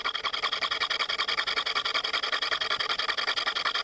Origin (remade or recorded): recorded